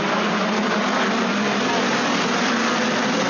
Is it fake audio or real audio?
real